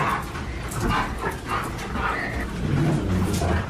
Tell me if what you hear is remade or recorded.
recorded